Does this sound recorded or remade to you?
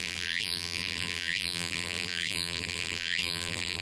remade